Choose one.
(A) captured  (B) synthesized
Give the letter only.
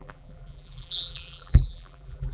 B